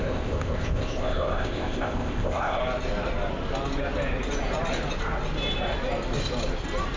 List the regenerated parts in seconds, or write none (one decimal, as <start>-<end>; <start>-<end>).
0.0-2.6